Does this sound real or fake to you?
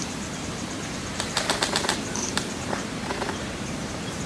fake